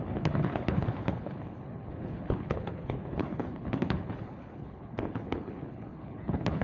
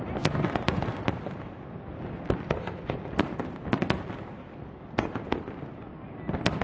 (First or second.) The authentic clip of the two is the second